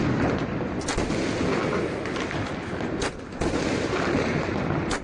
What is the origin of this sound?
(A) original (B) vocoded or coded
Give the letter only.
A